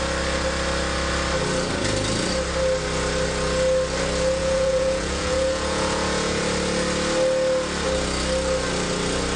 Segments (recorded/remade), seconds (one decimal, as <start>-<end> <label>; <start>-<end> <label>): 0.0-4.4 recorded; 4.4-6.4 remade; 6.4-9.4 recorded